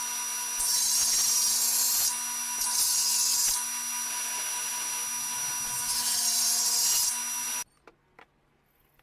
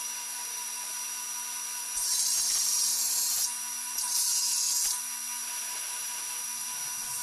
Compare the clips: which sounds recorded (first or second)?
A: first